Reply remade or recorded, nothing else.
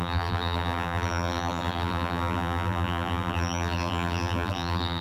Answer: remade